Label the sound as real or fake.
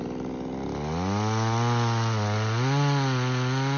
real